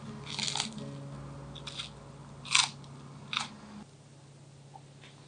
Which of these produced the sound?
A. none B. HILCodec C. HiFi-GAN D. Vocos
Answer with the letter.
A